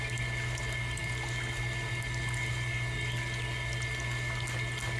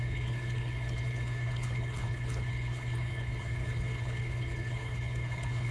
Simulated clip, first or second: second